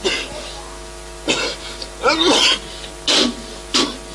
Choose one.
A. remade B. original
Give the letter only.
B